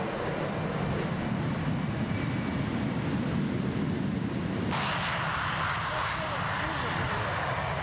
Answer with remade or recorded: recorded